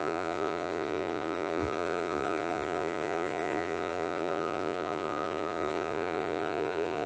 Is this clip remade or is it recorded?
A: remade